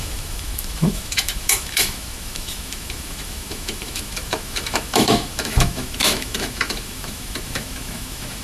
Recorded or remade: remade